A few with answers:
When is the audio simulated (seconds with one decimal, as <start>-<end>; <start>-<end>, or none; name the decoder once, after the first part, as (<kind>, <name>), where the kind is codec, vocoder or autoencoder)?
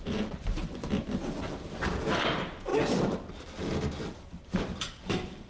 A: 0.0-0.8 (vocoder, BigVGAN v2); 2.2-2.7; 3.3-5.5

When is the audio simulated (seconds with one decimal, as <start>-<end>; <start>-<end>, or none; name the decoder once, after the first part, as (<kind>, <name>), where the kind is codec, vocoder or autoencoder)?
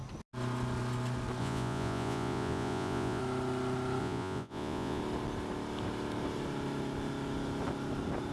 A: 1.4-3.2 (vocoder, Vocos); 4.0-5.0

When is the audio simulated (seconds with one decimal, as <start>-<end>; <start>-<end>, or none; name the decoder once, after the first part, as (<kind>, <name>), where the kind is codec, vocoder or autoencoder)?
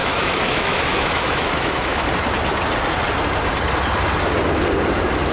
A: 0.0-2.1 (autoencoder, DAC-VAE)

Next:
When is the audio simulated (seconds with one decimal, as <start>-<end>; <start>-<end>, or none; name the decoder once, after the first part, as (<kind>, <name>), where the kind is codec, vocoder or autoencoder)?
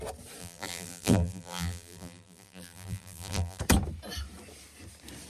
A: 0.4-3.6 (vocoder, BigVGAN v2)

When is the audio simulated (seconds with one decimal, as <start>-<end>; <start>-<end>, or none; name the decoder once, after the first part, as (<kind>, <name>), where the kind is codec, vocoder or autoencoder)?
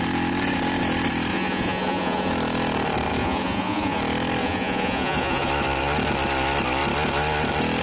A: 1.3-2.3 (vocoder, Vocos); 3.2-4.0; 4.4-5.5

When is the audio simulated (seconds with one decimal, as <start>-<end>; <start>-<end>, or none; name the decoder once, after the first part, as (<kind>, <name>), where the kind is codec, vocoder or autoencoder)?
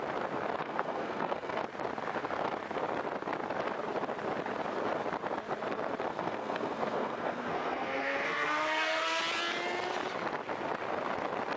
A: 0.6-1.6 (codec, SNAC); 6.1-9.2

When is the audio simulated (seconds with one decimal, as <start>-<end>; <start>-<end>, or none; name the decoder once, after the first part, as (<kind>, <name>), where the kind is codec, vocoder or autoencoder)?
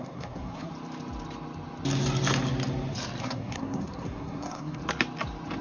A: 0.0-0.7 (codec, SNAC); 3.2-4.8